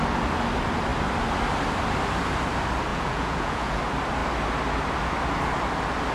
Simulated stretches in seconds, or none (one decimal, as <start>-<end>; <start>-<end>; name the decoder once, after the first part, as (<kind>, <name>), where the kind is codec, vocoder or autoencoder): 2.9-3.8 (vocoder, Vocos)